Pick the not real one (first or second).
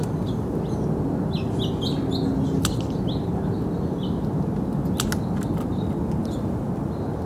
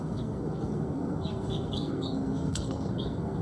second